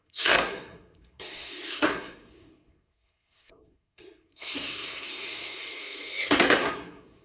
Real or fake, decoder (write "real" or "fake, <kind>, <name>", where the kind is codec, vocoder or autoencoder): fake, codec, SNAC